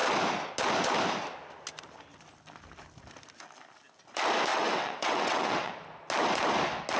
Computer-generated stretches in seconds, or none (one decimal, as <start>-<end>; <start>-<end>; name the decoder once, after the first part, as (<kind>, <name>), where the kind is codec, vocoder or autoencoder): 4.5-5.7 (vocoder, WaveNeXt)